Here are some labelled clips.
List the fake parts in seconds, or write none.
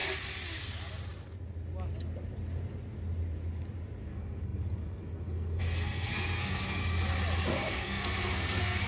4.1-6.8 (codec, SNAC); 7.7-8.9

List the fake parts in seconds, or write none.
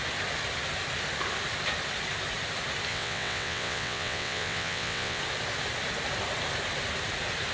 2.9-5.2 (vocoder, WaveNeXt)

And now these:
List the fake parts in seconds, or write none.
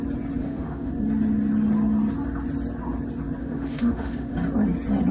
0.4-0.9 (autoencoder, DAC-VAE); 3.4-4.3